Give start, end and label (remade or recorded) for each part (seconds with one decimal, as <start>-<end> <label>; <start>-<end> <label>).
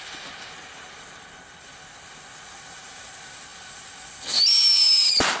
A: 0.0-5.4 recorded